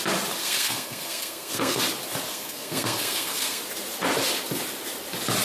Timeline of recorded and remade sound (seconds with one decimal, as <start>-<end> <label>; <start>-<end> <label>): 0.0-0.4 recorded; 0.4-1.8 remade; 1.8-2.3 recorded; 2.3-3.6 remade; 3.6-5.4 recorded